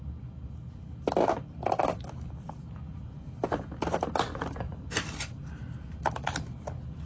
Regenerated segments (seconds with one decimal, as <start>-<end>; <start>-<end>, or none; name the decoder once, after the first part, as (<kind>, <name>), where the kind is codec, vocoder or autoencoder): 4.3-5.3 (vocoder, BigVGAN v2)